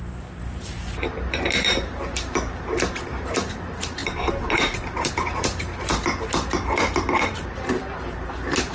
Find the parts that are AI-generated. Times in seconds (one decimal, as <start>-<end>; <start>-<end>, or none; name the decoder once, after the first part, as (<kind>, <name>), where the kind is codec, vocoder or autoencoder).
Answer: 0.0-5.9 (vocoder, BigVGAN v2); 7.2-8.7

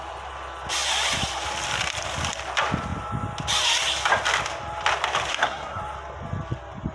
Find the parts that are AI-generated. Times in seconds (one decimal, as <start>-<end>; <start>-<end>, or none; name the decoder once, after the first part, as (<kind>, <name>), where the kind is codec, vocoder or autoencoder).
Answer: 5.3-5.8 (codec, SNAC)

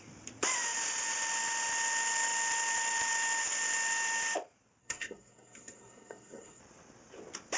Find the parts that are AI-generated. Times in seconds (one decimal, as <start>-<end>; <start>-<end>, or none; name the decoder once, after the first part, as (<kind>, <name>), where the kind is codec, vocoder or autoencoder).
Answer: 4.8-6.6 (codec, SNAC)

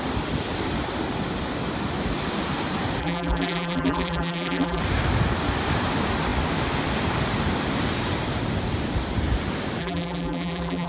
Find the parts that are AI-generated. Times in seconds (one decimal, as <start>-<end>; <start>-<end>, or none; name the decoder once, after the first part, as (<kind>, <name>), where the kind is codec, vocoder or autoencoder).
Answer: 3.0-4.8 (vocoder, BigVGAN v2); 9.8-10.9

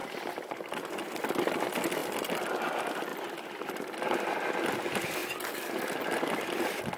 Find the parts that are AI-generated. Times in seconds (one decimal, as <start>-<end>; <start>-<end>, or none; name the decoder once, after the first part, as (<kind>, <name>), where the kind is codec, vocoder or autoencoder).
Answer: none

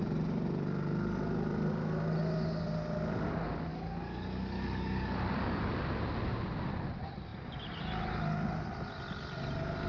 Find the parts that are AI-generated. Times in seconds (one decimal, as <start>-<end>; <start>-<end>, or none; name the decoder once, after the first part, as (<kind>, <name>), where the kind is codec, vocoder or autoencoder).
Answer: 3.7-5.7 (codec, DAC)

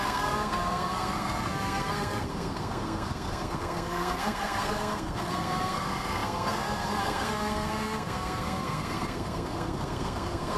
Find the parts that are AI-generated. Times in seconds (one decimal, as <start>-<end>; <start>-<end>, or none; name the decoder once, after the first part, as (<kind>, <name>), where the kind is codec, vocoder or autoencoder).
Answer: 0.0-10.6 (codec, SNAC)